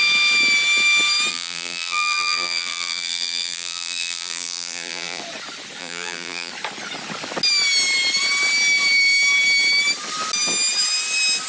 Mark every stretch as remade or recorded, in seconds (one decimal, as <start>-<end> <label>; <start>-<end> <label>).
0.0-1.3 recorded; 1.3-5.2 remade; 5.2-5.8 recorded; 5.8-6.5 remade; 6.5-11.5 recorded